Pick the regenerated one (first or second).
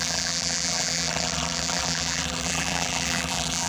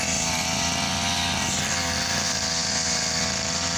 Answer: first